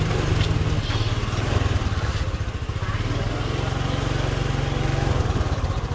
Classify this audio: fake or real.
real